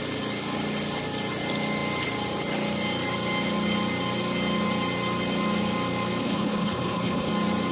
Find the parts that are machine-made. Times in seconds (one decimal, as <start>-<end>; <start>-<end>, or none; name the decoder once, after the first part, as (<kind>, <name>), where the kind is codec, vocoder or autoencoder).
6.2-7.3 (codec, HILCodec)